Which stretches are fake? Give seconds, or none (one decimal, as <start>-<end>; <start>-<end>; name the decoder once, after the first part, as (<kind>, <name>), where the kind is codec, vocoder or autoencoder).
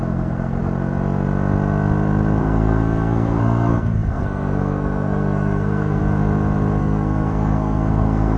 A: 0.0-0.6 (codec, SNAC); 2.4-6.0; 6.8-8.4